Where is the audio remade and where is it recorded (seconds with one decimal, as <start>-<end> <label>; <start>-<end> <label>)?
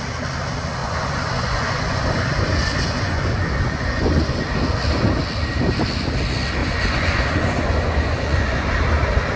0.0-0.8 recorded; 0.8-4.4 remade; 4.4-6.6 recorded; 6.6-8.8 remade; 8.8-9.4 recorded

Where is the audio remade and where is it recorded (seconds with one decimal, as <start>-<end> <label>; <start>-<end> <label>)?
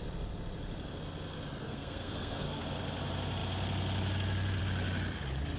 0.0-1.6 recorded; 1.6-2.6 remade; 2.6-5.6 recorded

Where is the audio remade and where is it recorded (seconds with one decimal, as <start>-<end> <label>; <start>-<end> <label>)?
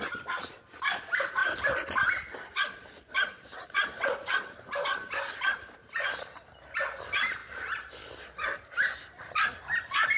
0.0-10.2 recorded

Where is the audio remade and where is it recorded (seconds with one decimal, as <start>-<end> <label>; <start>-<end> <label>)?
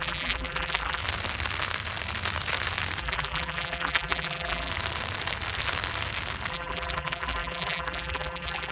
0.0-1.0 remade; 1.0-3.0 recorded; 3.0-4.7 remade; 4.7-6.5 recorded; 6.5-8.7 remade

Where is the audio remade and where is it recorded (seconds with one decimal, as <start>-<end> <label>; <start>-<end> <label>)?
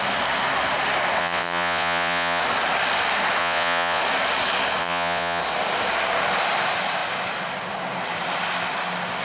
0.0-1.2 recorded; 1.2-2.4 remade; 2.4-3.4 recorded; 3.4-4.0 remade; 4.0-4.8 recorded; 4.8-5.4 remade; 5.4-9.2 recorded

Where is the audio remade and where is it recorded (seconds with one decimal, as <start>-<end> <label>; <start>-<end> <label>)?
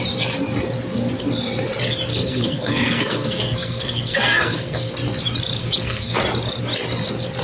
0.0-2.1 recorded; 2.1-4.9 remade; 4.9-5.6 recorded; 5.6-6.2 remade; 6.2-7.4 recorded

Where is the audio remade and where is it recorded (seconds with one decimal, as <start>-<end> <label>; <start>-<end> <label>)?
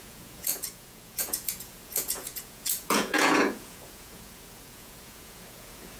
0.0-6.0 remade